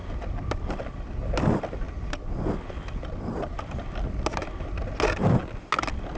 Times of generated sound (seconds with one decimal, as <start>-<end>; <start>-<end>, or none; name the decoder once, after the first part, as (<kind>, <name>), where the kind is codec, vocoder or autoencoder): none